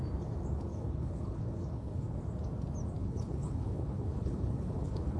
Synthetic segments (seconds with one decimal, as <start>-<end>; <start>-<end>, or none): 0.7-2.2; 3.0-5.2